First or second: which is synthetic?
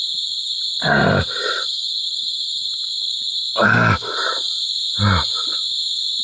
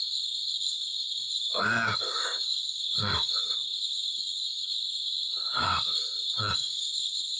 second